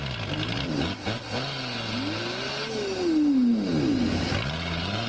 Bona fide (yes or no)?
yes